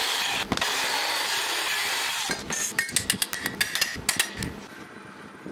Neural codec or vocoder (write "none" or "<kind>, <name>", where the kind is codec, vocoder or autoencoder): none